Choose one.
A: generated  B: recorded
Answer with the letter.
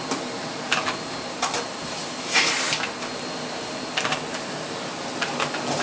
B